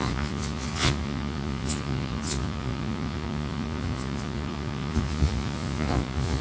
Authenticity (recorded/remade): remade